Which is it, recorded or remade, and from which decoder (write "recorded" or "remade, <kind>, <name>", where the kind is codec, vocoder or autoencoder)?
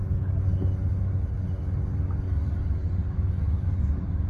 recorded